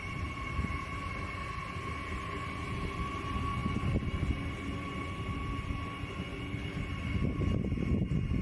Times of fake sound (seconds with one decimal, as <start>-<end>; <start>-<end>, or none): none